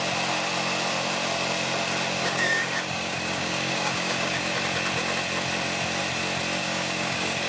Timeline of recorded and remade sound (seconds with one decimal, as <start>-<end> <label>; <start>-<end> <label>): 0.0-2.2 recorded; 2.2-4.6 remade; 4.6-6.6 recorded; 6.6-7.5 remade